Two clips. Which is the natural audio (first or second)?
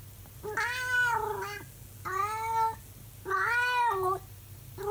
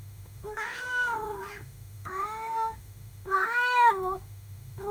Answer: first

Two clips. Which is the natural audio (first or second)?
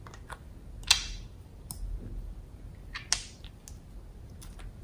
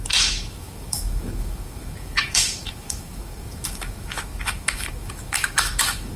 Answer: first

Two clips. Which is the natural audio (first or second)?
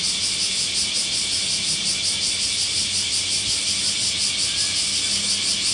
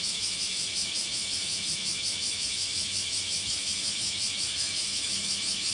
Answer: first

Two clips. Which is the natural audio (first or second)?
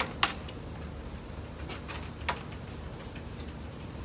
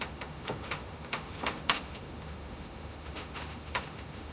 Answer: first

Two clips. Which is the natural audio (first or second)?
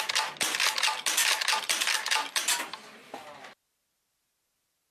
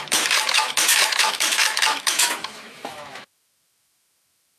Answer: first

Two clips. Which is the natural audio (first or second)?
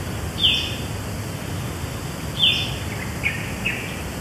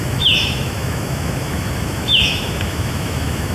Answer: first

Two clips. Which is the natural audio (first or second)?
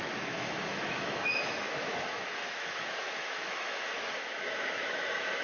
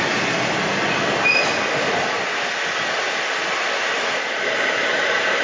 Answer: second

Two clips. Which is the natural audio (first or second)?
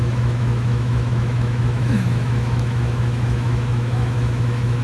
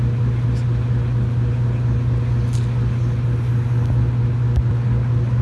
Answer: second